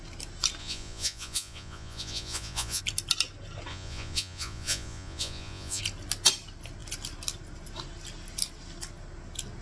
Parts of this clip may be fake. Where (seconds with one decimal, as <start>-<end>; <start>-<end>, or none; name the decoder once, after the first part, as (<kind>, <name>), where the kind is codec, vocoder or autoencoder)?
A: 0.6-2.8 (vocoder, Vocos); 3.7-5.8